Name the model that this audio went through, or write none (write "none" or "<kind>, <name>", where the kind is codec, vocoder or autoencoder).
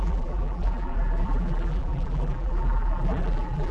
vocoder, BigVGAN v2